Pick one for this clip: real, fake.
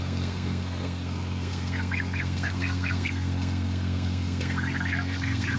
fake